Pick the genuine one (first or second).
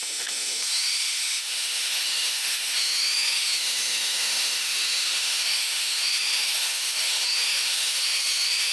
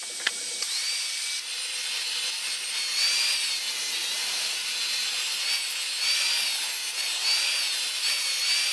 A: second